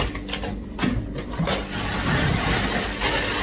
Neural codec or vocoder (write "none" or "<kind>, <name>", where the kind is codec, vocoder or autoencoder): none